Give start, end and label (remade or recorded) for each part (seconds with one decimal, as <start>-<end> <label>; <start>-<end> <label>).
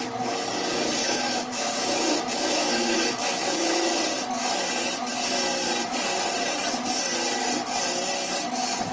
0.0-1.0 recorded; 1.0-4.0 remade; 4.0-8.9 recorded